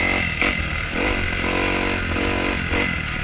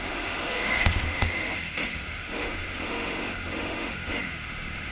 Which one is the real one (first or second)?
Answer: first